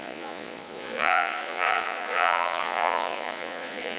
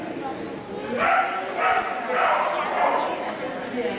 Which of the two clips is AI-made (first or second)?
first